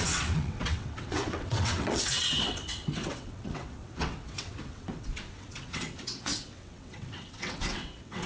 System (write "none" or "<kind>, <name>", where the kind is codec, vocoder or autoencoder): vocoder, WaveNeXt